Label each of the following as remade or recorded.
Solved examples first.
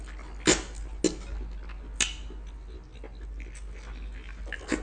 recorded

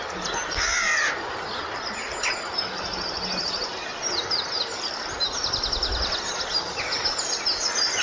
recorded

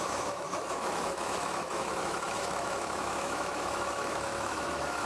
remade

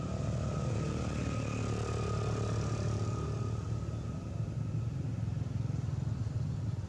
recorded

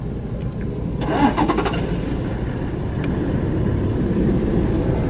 recorded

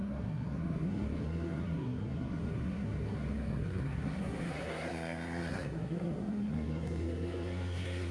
remade